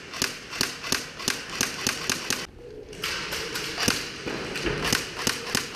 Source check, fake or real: real